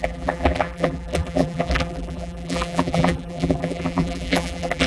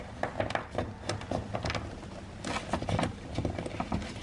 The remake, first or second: first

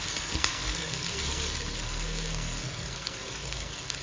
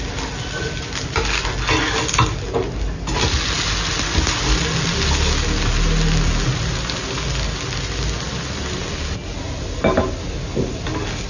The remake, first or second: first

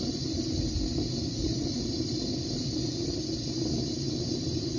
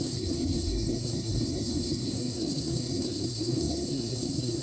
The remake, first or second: second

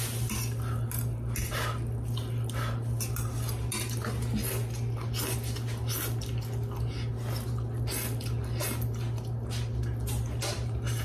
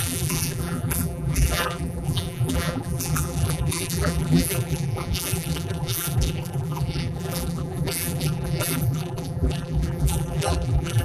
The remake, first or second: second